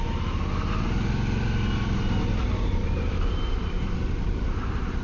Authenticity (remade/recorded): recorded